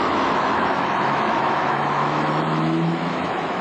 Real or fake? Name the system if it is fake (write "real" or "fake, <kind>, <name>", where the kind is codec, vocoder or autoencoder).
fake, autoencoder, DAC-VAE